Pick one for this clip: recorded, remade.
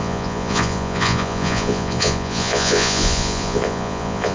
remade